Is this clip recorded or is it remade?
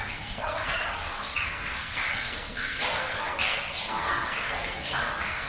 remade